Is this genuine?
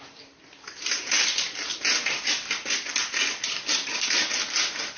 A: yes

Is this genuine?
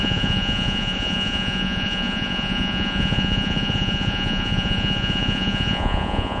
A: no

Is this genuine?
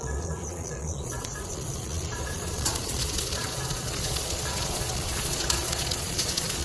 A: no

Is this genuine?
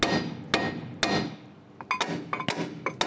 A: yes